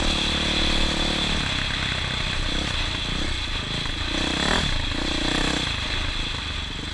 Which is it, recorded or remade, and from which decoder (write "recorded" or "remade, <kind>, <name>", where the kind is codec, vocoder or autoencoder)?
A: recorded